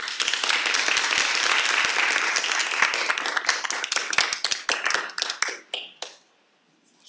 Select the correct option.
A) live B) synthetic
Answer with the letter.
A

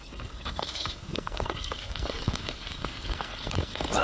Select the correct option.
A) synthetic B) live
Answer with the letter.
A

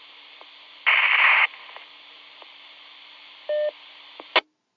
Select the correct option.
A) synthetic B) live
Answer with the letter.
B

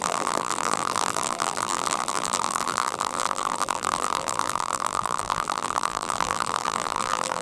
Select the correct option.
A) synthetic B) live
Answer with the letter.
A